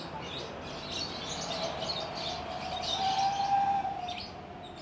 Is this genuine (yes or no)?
yes